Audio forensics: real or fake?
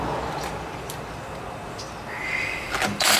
real